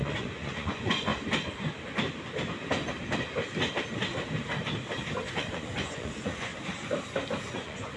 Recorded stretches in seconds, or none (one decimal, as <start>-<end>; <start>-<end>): 1.1-5.3; 6.5-7.5